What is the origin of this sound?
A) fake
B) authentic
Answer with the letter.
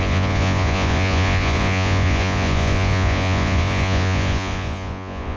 A